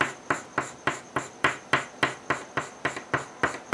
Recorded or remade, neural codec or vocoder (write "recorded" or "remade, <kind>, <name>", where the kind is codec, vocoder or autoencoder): recorded